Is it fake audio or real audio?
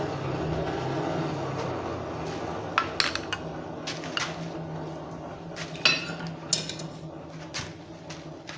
real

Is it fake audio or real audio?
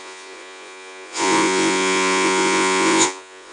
fake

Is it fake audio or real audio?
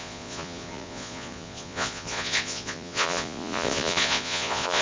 fake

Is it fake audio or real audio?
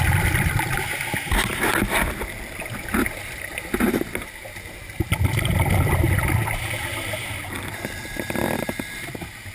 real